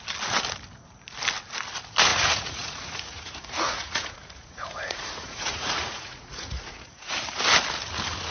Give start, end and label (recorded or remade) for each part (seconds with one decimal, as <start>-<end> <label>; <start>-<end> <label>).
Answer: 0.0-2.1 recorded; 2.1-7.1 remade; 7.1-8.3 recorded